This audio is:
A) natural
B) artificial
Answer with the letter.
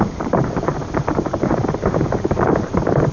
B